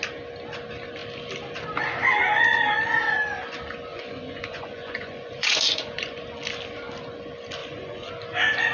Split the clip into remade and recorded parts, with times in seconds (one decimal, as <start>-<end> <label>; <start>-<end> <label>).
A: 0.0-3.9 recorded; 3.9-6.2 remade; 6.2-7.6 recorded; 7.6-8.1 remade; 8.1-8.7 recorded